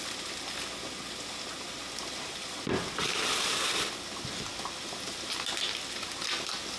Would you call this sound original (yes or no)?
yes